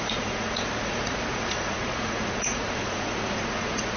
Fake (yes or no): yes